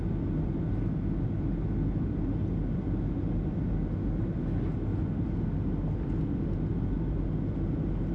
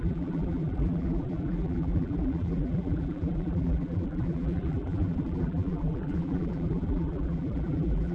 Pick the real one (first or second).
first